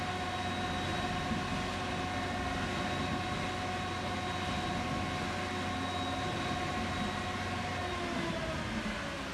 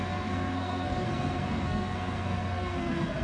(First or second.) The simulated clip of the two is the second